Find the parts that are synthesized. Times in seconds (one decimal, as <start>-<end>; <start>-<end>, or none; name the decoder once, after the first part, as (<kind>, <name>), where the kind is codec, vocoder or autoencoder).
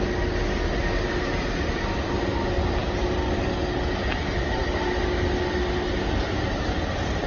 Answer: none